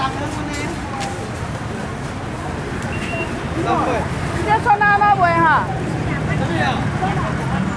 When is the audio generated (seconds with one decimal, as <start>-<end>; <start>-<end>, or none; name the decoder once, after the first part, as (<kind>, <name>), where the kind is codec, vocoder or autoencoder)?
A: none